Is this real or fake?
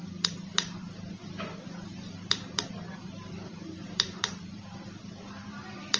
fake